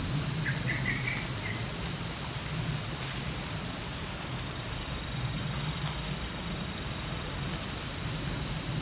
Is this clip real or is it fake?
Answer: real